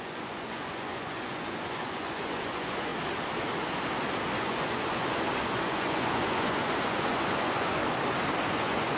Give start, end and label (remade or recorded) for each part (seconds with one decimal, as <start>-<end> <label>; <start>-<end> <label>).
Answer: 0.0-2.9 remade; 2.9-4.4 recorded; 4.4-7.8 remade; 7.8-8.5 recorded; 8.5-9.0 remade